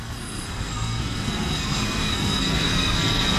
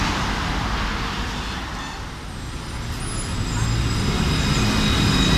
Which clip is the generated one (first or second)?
first